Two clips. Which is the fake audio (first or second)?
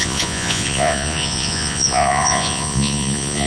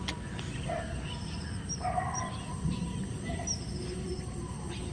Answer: first